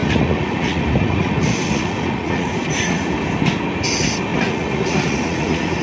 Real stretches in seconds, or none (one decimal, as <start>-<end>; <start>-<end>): 3.1-4.3